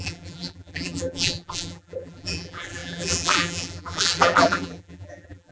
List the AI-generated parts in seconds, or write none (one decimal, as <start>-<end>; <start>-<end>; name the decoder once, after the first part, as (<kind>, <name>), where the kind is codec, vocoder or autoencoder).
0.0-5.5 (vocoder, BigVGAN v2)